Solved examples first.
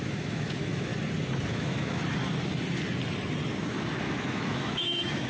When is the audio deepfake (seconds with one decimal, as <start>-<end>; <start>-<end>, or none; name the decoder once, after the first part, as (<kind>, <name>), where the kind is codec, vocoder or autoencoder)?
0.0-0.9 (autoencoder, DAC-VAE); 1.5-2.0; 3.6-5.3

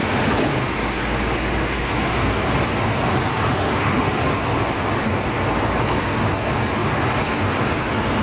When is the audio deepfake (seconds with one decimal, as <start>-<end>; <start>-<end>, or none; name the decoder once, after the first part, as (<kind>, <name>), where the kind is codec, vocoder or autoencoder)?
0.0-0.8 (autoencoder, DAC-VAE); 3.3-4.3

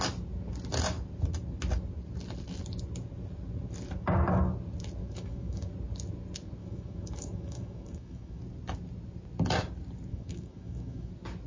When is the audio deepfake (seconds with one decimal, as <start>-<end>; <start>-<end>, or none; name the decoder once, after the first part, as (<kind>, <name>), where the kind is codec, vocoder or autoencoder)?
5.0-5.7 (autoencoder, DAC-VAE); 6.6-8.4; 10.1-11.1